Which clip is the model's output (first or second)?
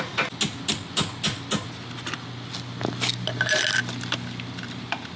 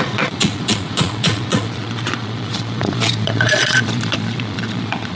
second